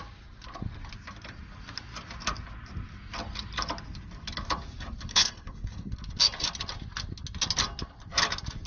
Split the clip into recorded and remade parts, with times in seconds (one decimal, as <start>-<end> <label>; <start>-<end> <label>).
0.0-5.1 recorded; 5.1-5.9 remade; 5.9-8.7 recorded